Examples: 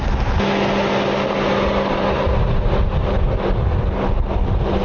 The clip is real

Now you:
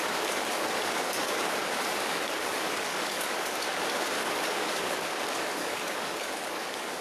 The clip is fake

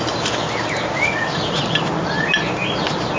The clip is real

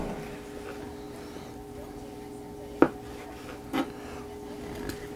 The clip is real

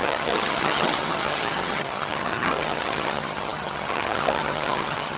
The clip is fake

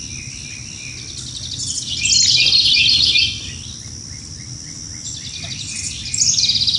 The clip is real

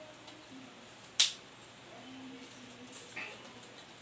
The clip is real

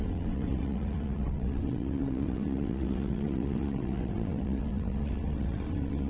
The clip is fake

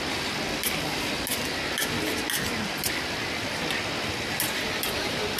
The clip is real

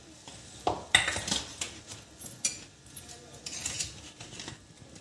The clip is real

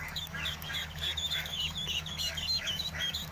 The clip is fake